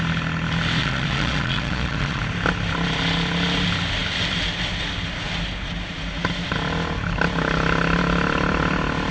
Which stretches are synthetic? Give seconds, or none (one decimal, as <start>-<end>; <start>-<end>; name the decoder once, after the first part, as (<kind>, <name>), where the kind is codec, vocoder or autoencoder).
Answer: 0.8-2.2 (vocoder, Vocos)